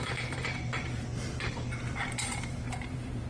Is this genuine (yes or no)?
no